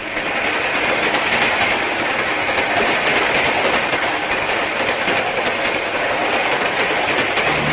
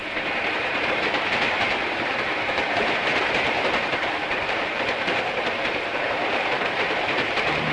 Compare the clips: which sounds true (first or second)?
first